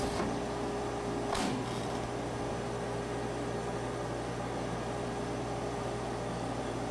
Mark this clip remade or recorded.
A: recorded